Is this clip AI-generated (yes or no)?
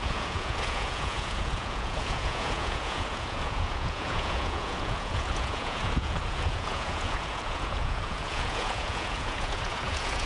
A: yes